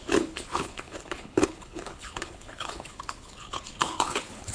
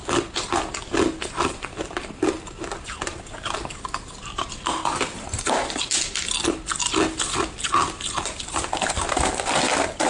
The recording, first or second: second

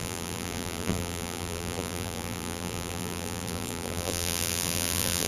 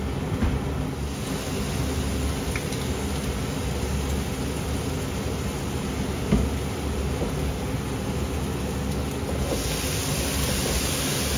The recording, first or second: second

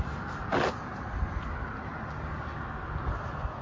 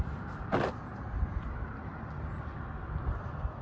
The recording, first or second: first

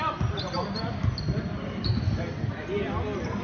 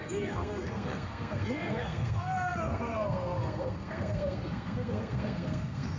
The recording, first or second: first